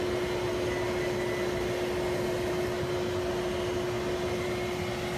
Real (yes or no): yes